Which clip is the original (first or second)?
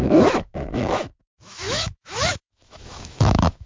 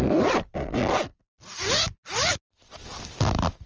second